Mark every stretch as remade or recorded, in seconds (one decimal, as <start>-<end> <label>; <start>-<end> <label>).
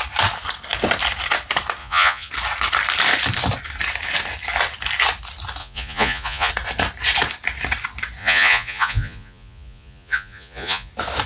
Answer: 0.0-1.8 recorded; 1.8-2.3 remade; 2.3-5.6 recorded; 5.6-6.5 remade; 6.5-8.2 recorded; 8.2-10.9 remade; 10.9-11.3 recorded